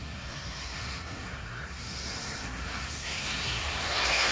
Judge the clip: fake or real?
fake